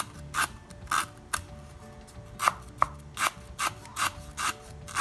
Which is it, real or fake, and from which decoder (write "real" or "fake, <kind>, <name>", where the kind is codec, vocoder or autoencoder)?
real